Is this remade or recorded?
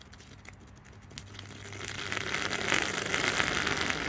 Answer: recorded